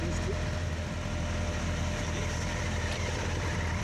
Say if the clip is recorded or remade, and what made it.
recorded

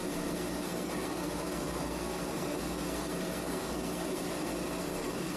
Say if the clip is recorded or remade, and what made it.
remade, codec, SNAC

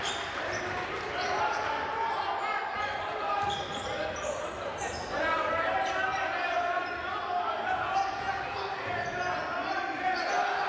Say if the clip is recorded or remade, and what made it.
recorded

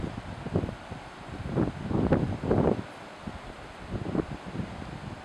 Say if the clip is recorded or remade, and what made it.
recorded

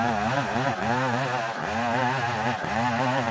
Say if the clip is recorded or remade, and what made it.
recorded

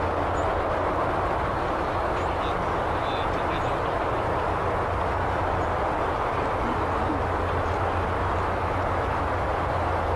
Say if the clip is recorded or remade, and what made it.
recorded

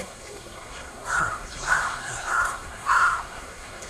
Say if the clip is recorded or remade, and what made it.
remade, codec, SNAC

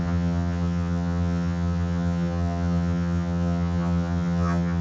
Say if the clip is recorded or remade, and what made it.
remade, vocoder, HiFi-GAN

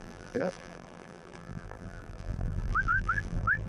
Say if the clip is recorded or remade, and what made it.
remade, vocoder, BigVGAN v2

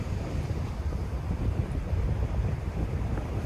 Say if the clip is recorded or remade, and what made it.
remade, vocoder, BigVGAN v2